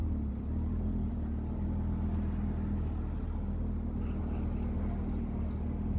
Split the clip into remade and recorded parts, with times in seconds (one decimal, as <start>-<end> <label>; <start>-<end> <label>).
0.0-6.0 recorded